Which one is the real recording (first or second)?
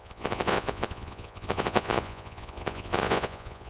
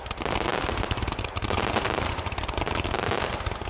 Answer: second